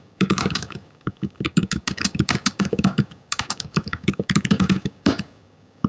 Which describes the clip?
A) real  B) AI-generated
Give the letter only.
B